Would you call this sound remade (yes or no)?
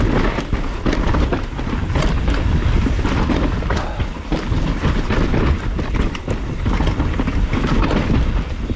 no